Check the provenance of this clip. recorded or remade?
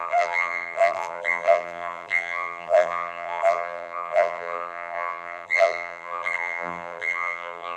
remade